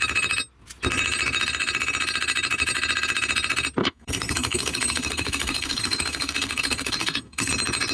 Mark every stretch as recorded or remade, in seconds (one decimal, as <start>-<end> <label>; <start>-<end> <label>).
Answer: 0.0-3.8 recorded; 3.8-7.5 remade; 7.5-7.9 recorded